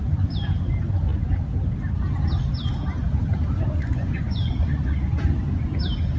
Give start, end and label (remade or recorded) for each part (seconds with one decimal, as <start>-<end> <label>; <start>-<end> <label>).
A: 0.0-3.7 recorded; 3.7-5.2 remade; 5.2-6.2 recorded